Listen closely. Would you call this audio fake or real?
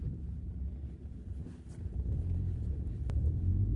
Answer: fake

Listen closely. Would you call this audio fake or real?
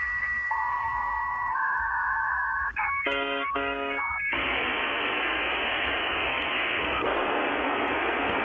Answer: fake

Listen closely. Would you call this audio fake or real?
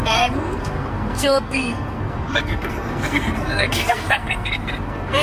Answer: fake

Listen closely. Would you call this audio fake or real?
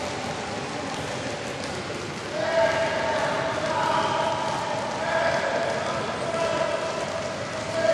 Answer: real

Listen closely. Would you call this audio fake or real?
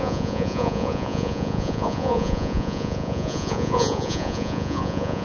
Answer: fake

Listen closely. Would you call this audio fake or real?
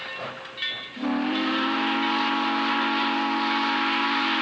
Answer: real